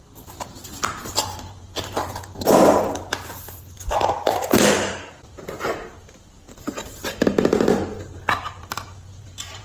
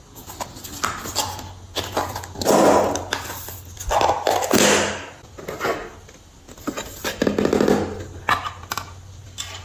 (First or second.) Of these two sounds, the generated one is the first